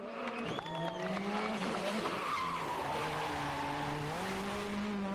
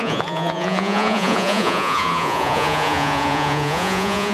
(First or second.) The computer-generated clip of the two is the second